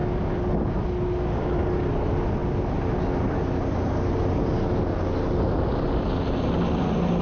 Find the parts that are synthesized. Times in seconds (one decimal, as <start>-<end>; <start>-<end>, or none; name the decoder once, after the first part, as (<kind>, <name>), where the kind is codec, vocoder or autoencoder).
none